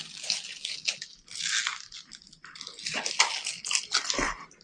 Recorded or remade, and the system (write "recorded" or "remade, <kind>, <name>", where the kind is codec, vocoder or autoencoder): recorded